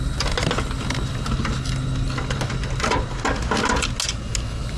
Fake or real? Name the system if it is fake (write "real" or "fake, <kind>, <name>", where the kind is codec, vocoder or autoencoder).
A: real